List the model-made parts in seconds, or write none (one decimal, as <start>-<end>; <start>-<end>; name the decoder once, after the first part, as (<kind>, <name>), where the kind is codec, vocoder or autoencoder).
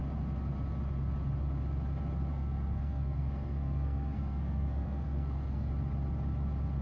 2.3-5.7 (codec, SNAC)